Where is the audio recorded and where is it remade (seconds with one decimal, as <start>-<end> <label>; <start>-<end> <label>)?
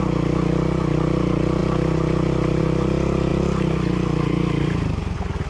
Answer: 0.0-5.5 recorded